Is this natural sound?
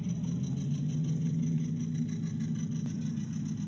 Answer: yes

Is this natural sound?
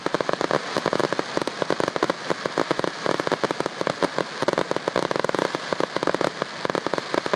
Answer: yes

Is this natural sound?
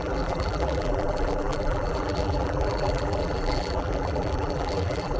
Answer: no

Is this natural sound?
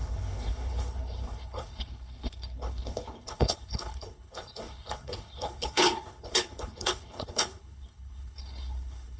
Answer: no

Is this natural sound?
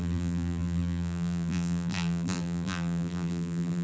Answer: no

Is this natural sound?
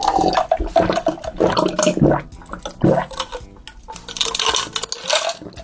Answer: yes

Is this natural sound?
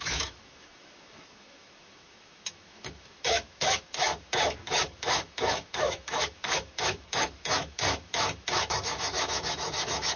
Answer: no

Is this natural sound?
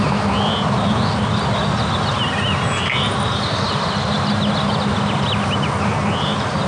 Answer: yes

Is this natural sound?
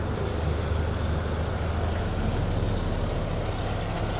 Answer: yes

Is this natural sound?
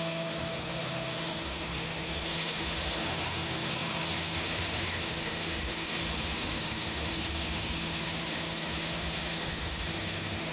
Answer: no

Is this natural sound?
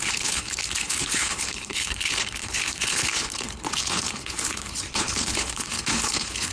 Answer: no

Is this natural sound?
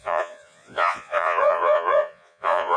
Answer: no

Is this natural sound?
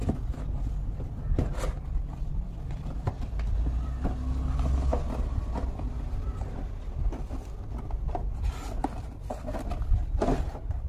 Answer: yes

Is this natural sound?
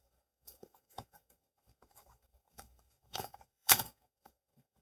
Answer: no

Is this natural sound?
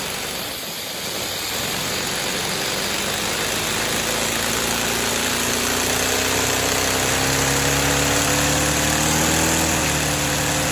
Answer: yes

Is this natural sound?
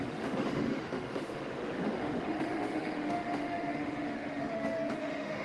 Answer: no